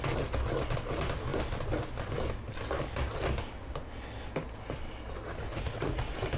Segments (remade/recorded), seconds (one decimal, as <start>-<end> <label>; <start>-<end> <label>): 0.0-5.5 recorded; 5.5-6.0 remade; 6.0-6.4 recorded